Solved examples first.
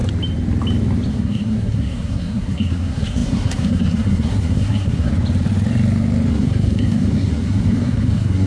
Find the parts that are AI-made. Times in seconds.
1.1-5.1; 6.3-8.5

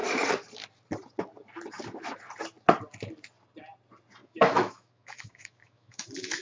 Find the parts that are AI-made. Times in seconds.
4.2-6.4

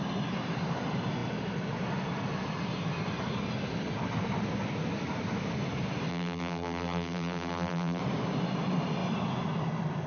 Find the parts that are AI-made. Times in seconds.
6.1-8.0

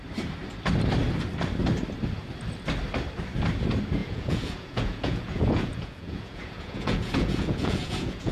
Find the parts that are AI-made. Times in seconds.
4.0-8.3

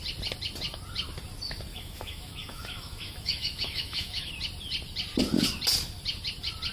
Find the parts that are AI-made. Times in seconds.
1.7-4.3

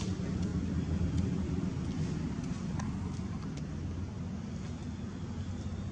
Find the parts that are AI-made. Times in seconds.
none

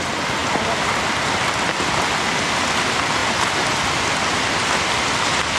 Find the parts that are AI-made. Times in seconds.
none

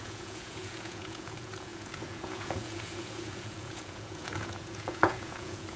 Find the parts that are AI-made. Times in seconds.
0.0-5.8